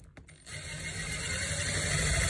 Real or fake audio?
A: real